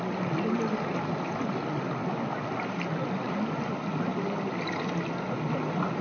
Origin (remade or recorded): recorded